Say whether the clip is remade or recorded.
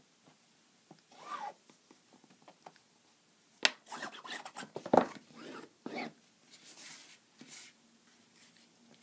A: recorded